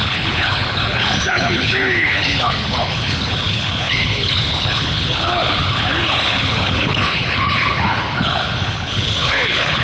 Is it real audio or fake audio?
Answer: fake